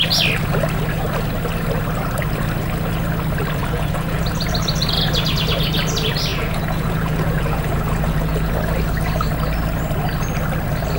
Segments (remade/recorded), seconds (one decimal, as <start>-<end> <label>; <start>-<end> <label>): 0.0-3.6 recorded; 3.6-4.2 remade; 4.2-6.3 recorded; 6.3-8.5 remade; 8.5-11.0 recorded